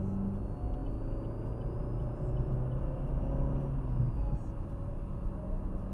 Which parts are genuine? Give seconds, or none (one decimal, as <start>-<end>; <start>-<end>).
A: 0.0-5.9